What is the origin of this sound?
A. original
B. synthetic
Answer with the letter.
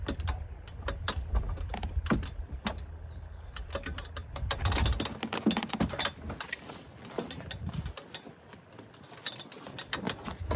A